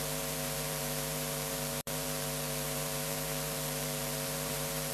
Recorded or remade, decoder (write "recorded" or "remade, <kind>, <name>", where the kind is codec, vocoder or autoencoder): remade, vocoder, BigVGAN v2